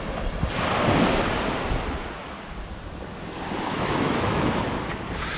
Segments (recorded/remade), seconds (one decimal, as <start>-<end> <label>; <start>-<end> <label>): 0.0-3.7 recorded; 3.7-4.5 remade; 4.5-5.4 recorded